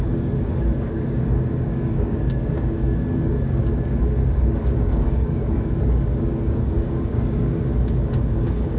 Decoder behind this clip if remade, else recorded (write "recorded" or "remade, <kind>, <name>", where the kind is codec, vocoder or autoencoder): remade, codec, DAC